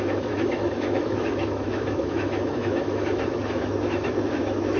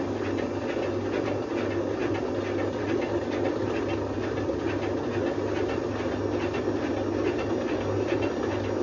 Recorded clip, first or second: second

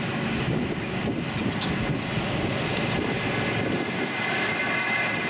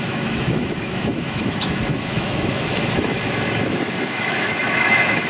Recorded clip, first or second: first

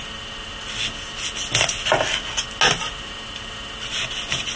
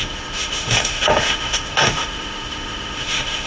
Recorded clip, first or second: first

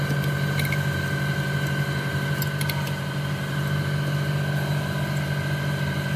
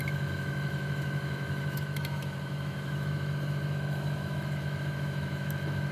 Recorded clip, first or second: first